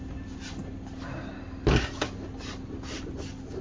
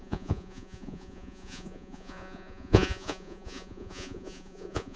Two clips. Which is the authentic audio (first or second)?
first